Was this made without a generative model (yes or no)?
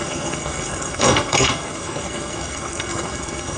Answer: no